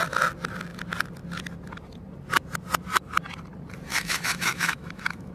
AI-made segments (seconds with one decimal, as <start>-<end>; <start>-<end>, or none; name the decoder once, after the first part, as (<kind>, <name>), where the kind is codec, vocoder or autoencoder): 3.9-5.3 (autoencoder, DAC-VAE)